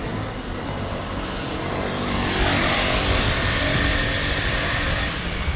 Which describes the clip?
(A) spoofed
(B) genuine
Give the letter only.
B